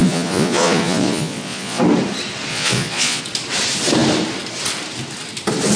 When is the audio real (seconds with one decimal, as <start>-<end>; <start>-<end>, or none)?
1.8-2.5; 3.2-5.8